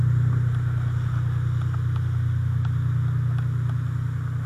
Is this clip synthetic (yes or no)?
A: no